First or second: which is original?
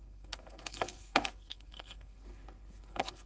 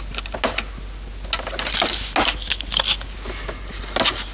second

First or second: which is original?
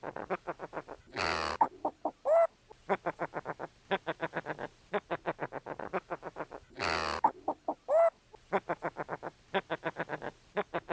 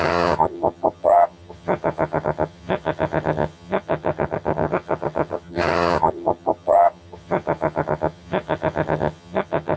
first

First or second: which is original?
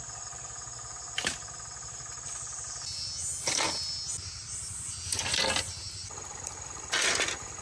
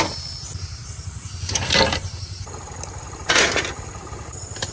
first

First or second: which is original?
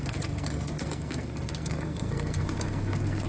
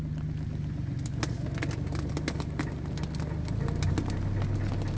second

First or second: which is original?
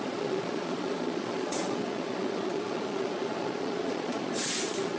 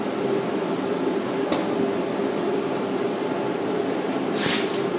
second